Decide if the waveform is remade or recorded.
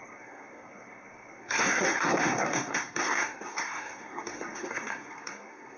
remade